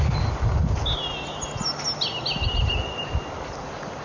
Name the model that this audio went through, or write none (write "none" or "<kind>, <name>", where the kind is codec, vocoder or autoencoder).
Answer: none